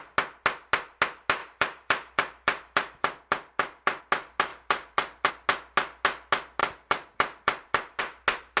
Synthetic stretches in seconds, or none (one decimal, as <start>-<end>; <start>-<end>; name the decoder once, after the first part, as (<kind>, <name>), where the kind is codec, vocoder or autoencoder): 1.4-4.0 (vocoder, BigVGAN v2); 4.5-5.3; 6.6-8.0